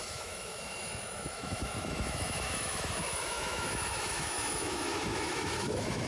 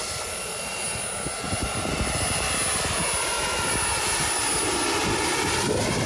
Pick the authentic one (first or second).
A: second